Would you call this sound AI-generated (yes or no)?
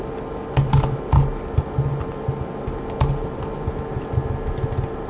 no